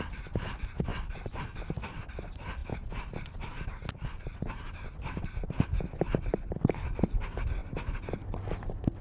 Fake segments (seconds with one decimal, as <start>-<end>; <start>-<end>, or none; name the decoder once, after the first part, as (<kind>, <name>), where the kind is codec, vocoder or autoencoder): 0.0-0.9 (vocoder, BigVGAN v2); 1.4-7.6; 8.6-9.0